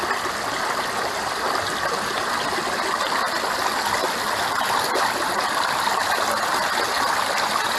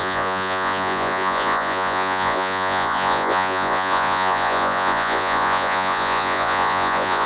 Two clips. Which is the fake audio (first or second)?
second